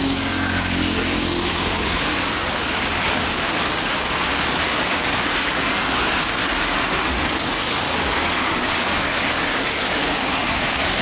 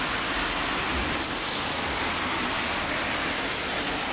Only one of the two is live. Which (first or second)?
second